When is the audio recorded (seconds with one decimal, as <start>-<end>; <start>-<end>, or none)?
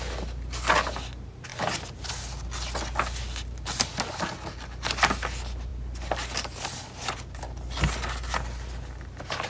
0.0-9.5